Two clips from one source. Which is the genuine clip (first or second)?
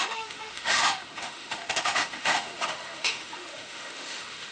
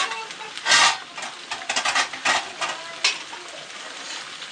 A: second